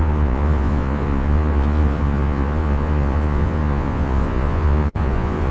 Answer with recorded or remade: remade